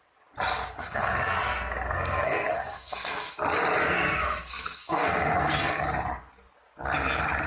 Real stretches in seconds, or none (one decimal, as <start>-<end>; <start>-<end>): 0.0-0.8; 3.3-3.8; 5.8-7.5